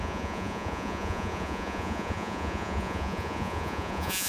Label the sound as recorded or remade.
remade